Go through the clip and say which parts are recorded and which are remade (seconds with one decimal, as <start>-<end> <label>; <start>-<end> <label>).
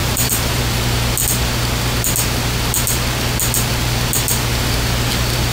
0.0-0.6 remade; 0.6-5.5 recorded